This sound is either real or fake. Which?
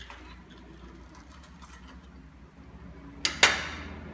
real